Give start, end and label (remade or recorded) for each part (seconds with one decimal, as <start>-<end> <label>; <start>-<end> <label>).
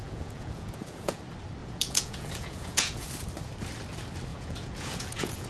0.0-1.2 remade; 1.2-1.6 recorded; 1.6-3.1 remade; 3.1-4.3 recorded; 4.3-5.5 remade